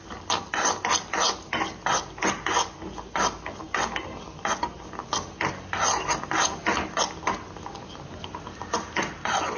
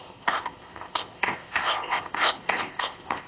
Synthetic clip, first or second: second